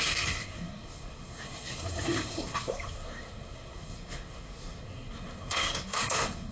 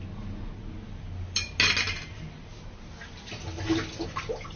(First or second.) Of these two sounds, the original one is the second